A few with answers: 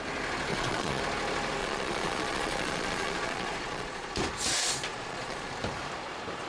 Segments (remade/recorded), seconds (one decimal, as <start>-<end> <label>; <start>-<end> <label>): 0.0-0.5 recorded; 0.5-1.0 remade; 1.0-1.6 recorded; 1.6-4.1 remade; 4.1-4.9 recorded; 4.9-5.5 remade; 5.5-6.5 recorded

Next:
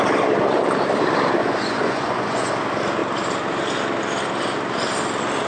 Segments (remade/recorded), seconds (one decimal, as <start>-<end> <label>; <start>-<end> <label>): 0.0-1.4 recorded; 1.4-2.5 remade; 2.5-5.5 recorded

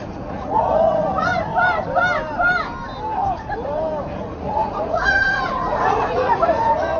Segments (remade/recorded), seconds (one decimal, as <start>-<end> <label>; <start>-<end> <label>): 0.0-1.3 remade; 1.3-4.1 recorded; 4.1-7.0 remade

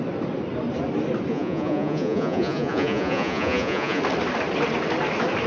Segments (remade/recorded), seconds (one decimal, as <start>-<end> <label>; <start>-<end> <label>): 0.0-1.3 recorded; 1.3-4.0 remade; 4.0-5.5 recorded

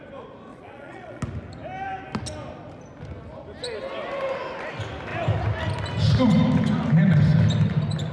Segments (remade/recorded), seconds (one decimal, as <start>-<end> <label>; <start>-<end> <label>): 0.0-0.5 recorded; 0.5-1.2 remade; 1.2-8.1 recorded